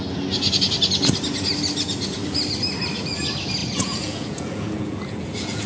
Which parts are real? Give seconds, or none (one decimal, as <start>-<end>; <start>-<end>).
0.0-3.6